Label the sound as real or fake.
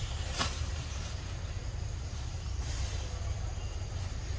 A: fake